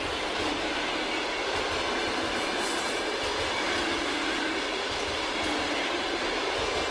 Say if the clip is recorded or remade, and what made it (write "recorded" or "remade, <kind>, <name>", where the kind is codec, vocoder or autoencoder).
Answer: recorded